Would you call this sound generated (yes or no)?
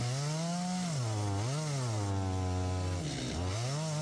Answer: no